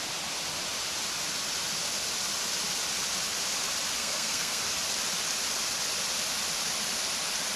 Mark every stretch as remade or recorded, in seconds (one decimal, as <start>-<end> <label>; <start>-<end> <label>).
0.0-4.0 recorded; 4.0-4.6 remade; 4.6-7.6 recorded